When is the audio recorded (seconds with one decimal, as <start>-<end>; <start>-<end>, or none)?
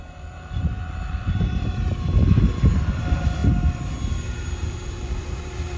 3.4-4.1